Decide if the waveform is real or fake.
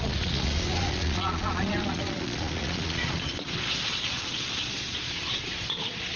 fake